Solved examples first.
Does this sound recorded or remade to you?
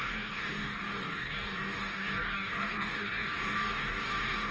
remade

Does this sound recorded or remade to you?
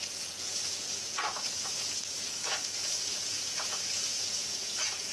remade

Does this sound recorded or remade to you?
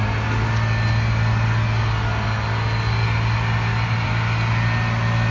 recorded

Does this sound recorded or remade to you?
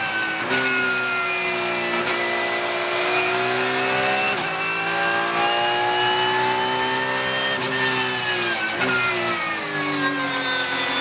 recorded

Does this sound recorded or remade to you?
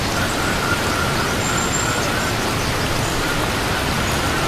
recorded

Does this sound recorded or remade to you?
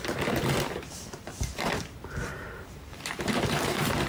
remade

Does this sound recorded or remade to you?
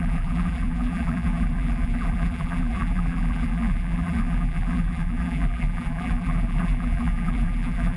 remade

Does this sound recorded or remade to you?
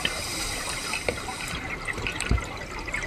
remade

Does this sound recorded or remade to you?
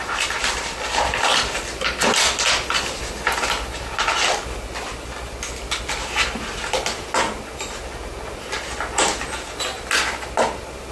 recorded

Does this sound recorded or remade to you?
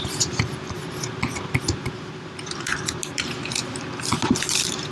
remade